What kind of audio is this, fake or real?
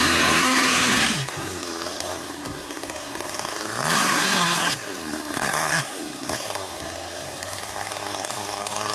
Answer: fake